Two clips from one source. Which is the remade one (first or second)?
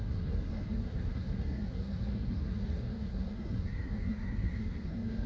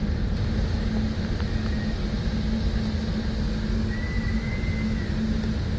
first